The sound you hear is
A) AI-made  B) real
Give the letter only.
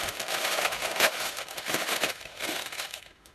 A